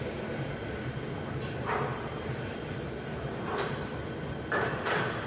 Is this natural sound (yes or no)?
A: yes